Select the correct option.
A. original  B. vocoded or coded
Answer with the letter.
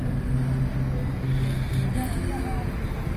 A